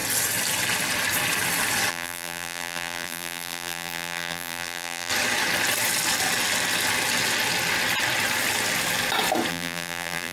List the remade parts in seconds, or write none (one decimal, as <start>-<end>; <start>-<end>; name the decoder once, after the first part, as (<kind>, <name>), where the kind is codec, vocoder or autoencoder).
1.9-5.1 (vocoder, BigVGAN v2); 9.5-10.3